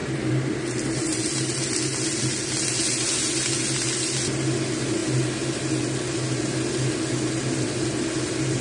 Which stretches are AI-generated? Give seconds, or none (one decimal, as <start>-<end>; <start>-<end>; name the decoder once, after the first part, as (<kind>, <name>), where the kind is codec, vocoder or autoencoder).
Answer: 0.0-0.6 (vocoder, BigVGAN v2)